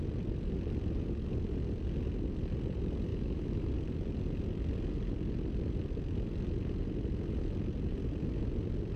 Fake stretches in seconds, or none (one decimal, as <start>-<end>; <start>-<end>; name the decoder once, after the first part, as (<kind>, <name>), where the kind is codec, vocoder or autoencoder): 3.1-3.7 (autoencoder, DAC-VAE)